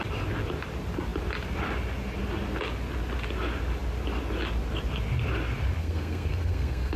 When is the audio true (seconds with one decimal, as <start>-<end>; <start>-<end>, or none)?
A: 0.0-5.8